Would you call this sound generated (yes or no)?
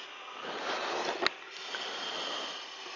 no